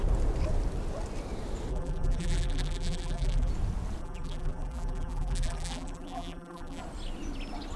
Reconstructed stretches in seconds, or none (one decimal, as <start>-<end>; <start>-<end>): 1.7-3.5; 4.0-6.8